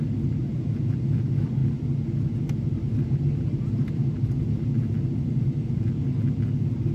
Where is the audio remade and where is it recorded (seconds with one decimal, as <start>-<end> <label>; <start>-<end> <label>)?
0.0-6.9 recorded